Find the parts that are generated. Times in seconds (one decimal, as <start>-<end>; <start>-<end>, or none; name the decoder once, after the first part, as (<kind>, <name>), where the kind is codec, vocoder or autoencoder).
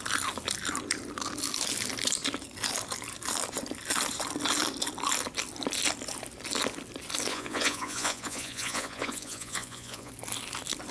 7.3-10.1 (vocoder, Vocos)